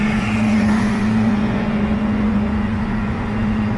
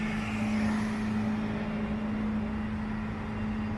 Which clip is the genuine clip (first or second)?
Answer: second